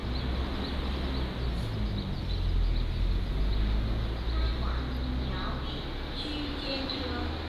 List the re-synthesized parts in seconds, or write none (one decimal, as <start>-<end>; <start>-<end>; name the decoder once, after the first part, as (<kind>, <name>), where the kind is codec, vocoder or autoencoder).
none